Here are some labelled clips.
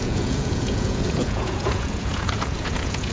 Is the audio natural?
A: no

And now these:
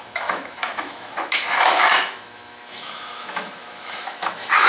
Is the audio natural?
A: no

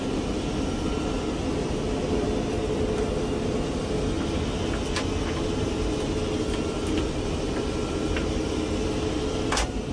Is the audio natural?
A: yes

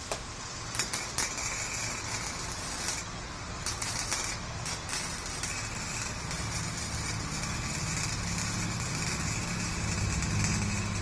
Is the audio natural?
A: yes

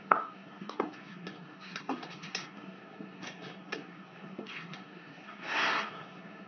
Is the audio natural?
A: no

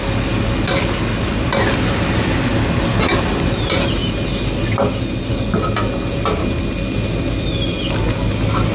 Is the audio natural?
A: yes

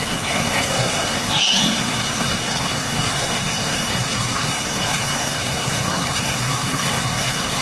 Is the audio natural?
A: no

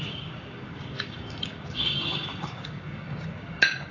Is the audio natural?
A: no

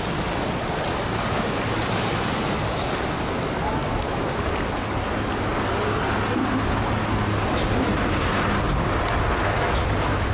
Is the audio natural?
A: yes